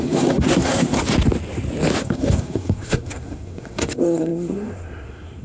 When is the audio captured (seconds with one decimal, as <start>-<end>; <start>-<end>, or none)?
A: 1.0-2.0